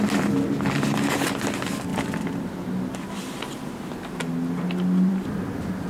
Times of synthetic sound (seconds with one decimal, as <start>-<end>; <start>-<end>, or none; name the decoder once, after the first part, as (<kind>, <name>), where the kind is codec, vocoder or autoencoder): none